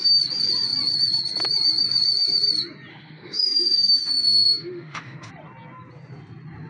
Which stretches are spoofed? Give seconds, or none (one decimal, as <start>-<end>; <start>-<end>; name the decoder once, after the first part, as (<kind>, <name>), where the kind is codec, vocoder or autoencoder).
2.9-5.3 (autoencoder, DAC-VAE)